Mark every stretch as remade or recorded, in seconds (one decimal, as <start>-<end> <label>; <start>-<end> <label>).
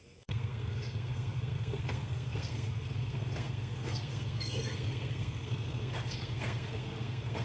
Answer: 0.0-7.4 remade